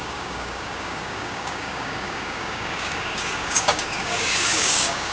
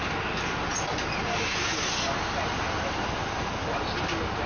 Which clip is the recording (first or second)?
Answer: second